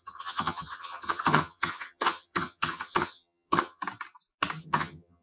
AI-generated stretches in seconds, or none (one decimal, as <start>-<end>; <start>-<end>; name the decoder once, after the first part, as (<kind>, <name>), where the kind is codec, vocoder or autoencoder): 0.0-3.8 (vocoder, HiFi-GAN); 4.6-5.2